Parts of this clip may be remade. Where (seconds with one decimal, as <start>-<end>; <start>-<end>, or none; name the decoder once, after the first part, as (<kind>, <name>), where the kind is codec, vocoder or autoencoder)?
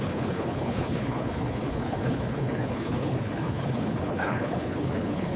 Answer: 0.0-5.4 (codec, HILCodec)